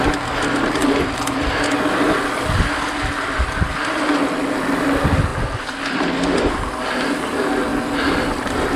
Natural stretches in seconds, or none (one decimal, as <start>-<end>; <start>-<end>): 0.0-8.8